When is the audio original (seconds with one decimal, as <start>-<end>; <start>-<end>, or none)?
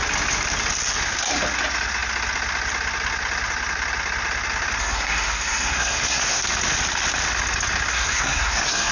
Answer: 0.0-4.8; 6.4-7.9